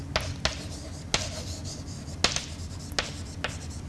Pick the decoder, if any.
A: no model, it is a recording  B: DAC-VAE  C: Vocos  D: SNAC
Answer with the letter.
A